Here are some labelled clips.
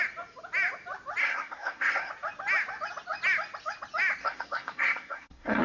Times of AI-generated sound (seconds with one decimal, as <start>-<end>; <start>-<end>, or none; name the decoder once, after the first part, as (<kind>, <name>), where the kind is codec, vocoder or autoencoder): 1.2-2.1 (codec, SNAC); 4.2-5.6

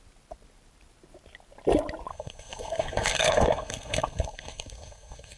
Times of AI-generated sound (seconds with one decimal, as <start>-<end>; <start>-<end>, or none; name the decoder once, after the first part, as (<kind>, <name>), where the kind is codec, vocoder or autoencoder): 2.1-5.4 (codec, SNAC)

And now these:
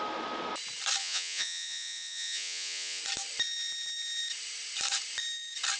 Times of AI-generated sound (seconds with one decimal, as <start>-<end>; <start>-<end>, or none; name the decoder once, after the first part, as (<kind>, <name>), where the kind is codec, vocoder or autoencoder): 1.0-3.0 (vocoder, Vocos)

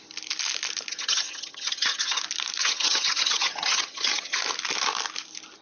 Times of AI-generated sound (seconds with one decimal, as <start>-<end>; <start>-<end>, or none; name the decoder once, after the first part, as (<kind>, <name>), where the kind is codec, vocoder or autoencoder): 0.9-2.2 (vocoder, HiFi-GAN); 2.6-4.4

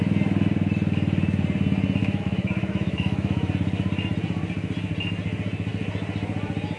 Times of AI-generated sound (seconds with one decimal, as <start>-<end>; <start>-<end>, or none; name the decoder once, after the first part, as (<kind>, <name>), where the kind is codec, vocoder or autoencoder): 2.0-3.5 (autoencoder, DAC-VAE)

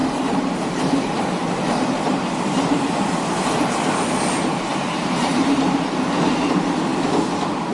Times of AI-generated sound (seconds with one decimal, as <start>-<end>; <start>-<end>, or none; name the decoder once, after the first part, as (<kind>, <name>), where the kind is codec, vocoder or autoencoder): 0.0-3.9 (vocoder, BigVGAN v2); 4.7-6.2

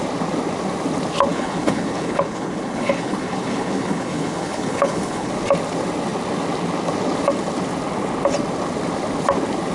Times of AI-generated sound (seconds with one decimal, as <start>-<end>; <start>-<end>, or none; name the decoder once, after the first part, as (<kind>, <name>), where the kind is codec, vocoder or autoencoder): 1.3-5.3 (codec, HILCodec)